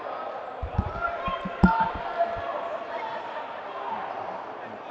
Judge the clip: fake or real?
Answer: real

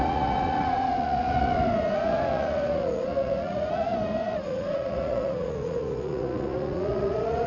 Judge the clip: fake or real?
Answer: fake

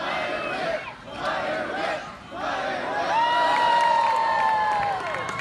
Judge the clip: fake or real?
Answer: fake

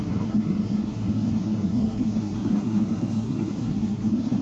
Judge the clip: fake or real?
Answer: fake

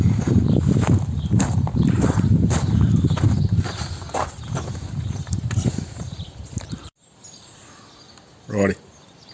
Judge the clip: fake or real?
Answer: fake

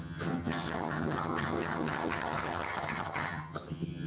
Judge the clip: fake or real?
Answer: fake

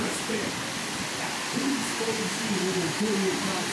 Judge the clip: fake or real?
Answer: real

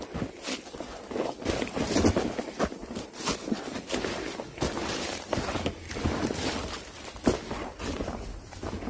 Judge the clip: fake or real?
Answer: real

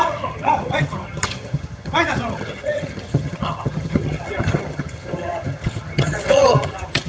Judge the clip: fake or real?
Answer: fake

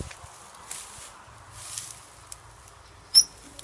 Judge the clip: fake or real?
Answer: real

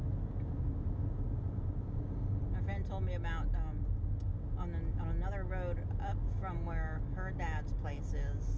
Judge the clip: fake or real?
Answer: real